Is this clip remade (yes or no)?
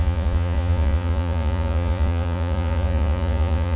yes